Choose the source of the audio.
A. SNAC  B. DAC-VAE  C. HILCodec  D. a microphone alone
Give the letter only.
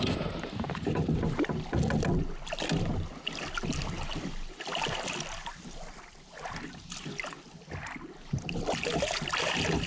D